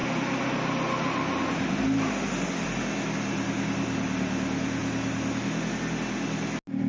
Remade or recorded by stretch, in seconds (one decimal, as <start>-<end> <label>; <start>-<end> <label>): 0.0-6.9 recorded